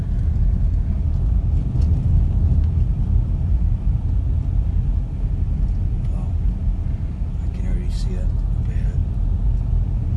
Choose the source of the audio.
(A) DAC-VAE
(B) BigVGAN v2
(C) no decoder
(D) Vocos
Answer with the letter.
C